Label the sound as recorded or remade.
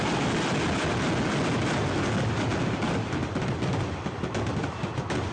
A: recorded